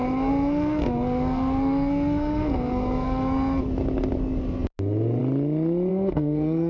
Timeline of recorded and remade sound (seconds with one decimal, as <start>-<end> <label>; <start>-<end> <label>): 0.0-3.6 remade; 3.6-5.9 recorded; 5.9-6.7 remade